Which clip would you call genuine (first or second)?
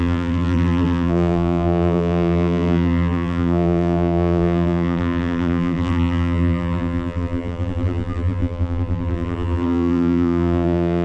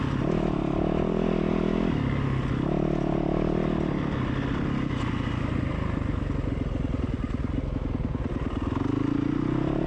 second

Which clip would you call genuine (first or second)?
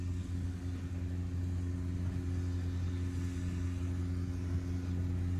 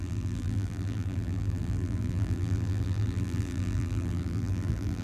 first